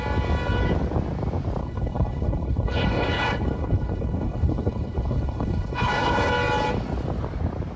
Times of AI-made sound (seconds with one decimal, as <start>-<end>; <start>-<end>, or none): 1.6-6.3